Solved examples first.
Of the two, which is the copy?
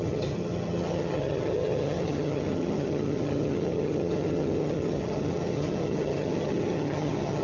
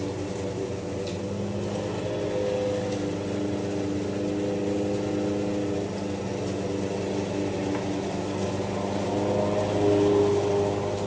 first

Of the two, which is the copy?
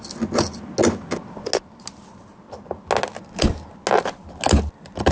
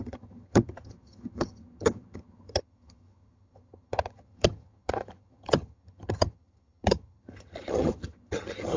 second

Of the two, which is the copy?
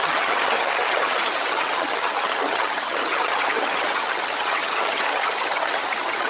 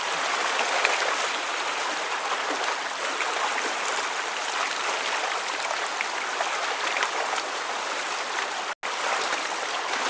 first